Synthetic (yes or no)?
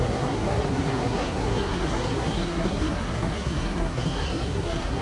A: yes